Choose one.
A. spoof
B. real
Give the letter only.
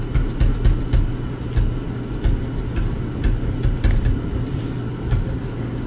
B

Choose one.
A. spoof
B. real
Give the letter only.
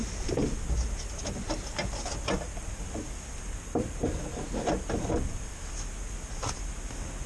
B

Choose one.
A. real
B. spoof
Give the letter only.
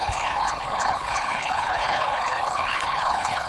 B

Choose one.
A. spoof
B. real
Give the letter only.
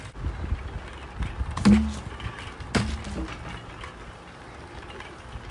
B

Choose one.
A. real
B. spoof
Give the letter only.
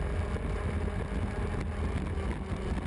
A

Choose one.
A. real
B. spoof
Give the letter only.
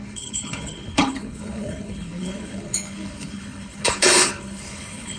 B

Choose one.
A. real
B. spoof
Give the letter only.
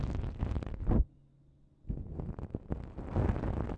A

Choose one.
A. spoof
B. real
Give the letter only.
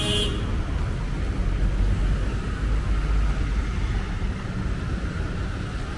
B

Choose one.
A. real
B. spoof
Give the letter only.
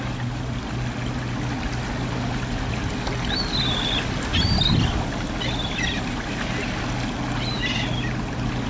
A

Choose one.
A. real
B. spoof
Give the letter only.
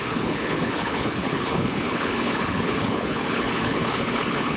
B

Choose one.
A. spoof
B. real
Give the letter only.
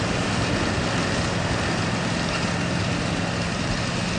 B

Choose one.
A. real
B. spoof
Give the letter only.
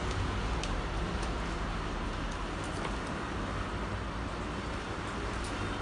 A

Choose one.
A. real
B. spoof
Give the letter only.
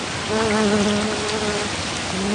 A